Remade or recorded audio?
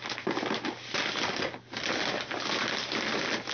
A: recorded